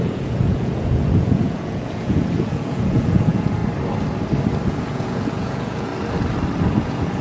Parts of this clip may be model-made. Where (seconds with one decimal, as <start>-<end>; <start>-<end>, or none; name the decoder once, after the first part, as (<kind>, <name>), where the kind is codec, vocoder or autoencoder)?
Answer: 0.0-3.6 (vocoder, Vocos); 4.7-5.9; 6.8-7.2